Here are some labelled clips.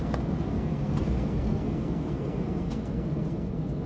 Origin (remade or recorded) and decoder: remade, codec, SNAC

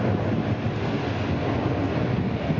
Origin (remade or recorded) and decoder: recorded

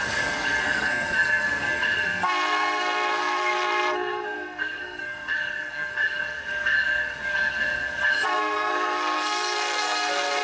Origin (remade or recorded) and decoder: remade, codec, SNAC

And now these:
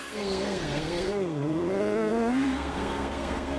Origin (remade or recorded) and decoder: remade, codec, SNAC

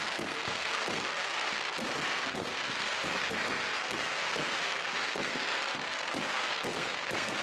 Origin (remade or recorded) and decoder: remade, codec, SNAC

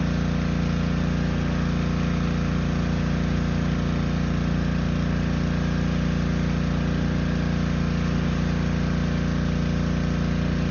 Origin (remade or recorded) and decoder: recorded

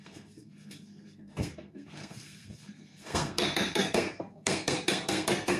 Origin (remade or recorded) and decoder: remade, codec, SNAC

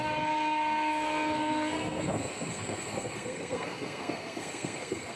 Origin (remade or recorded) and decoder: remade, codec, SNAC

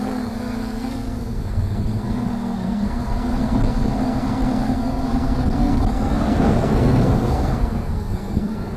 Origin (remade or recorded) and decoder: remade, codec, SNAC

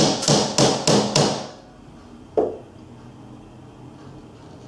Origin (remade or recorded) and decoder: recorded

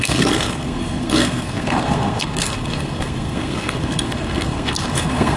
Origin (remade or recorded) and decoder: remade, codec, SNAC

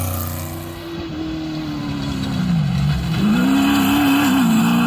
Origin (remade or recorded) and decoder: recorded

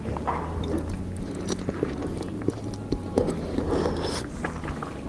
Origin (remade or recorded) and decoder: recorded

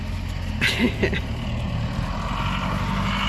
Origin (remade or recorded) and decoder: recorded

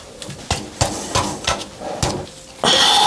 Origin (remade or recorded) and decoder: recorded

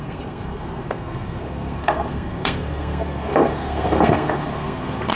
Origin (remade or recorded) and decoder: remade, codec, SNAC